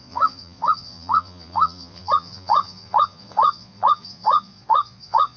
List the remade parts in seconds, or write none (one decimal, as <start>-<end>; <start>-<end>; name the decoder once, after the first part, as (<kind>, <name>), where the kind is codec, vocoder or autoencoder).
0.0-5.4 (vocoder, Vocos)